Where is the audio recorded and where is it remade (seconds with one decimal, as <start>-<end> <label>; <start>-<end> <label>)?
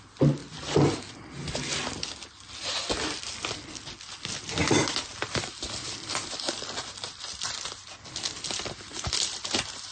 0.0-0.4 recorded; 0.4-1.0 remade; 1.0-5.1 recorded; 5.1-9.9 remade